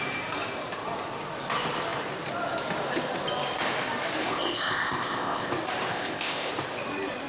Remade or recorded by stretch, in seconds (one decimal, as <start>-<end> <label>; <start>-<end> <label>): 0.0-4.2 recorded; 4.2-5.5 remade; 5.5-5.9 recorded; 5.9-6.5 remade; 6.5-7.3 recorded